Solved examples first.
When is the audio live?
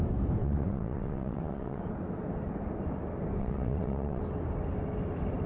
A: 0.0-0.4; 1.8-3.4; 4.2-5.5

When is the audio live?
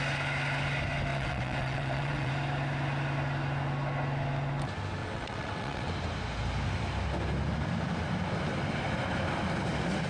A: 0.0-1.1; 2.3-5.0; 5.9-10.1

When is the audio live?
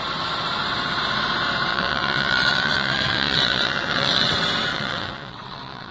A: 0.0-1.7; 4.3-4.7